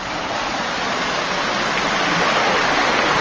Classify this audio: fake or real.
real